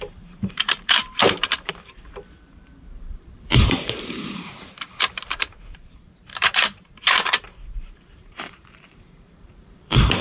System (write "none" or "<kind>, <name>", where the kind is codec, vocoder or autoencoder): vocoder, BigVGAN v2